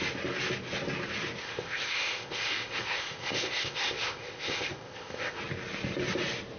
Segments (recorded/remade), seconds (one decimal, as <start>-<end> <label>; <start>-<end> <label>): 0.0-1.4 recorded; 1.4-5.4 remade; 5.4-6.6 recorded